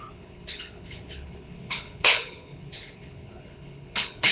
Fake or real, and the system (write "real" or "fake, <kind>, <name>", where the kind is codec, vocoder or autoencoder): fake, codec, HILCodec